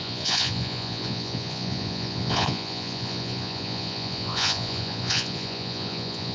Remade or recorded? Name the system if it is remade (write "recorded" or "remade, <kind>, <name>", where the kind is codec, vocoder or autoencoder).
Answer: remade, vocoder, Vocos